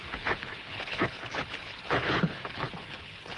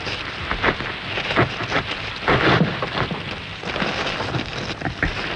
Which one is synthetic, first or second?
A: first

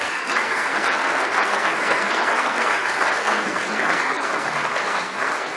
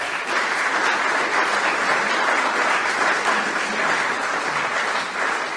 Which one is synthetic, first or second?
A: first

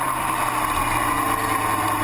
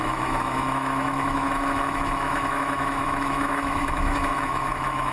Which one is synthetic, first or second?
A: second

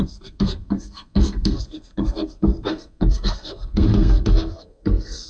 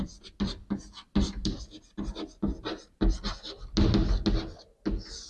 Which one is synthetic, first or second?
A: first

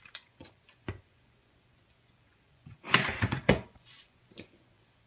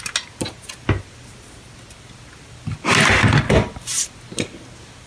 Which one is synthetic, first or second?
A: first